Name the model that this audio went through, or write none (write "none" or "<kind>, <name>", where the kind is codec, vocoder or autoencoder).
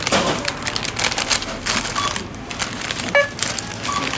none